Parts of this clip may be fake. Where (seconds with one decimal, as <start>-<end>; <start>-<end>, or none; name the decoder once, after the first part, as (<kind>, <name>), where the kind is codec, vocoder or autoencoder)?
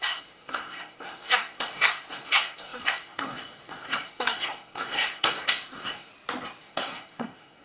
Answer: 0.0-6.1 (codec, SNAC); 6.6-7.6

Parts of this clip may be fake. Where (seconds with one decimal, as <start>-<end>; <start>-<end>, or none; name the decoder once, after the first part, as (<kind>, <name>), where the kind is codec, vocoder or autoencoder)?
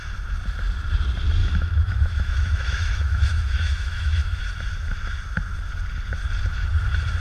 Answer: 1.4-4.4 (autoencoder, DAC-VAE)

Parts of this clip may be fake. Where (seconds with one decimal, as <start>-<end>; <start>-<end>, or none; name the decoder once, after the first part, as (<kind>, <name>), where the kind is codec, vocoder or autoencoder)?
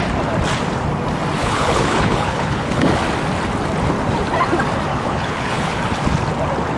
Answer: 1.4-3.0 (codec, HILCodec); 4.9-5.8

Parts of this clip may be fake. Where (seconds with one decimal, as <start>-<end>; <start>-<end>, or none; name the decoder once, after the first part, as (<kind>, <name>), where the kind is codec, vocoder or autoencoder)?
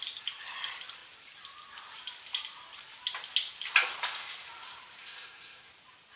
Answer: 5.0-5.7 (codec, SNAC)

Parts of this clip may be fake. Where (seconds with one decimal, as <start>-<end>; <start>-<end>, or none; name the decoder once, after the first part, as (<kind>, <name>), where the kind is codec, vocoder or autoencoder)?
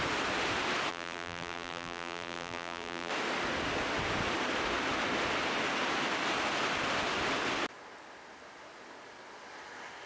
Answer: 0.9-3.1 (vocoder, BigVGAN v2)